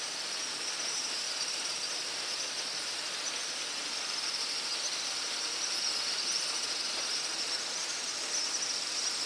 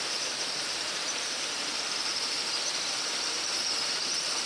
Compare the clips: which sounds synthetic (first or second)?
second